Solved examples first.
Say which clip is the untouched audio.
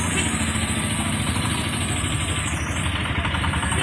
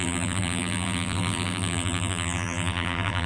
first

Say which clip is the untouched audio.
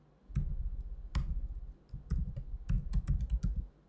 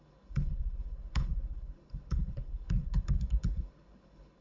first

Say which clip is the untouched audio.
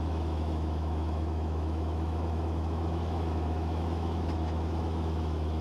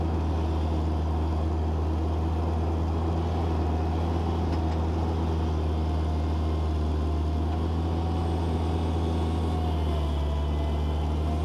second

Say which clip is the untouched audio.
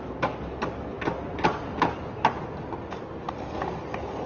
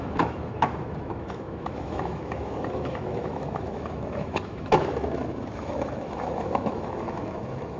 first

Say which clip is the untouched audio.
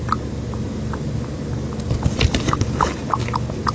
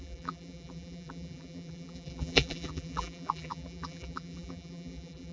first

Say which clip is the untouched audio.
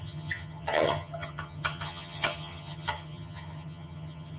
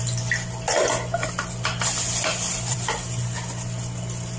second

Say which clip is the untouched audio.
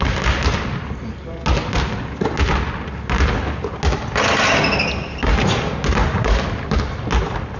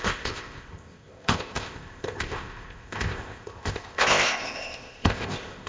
first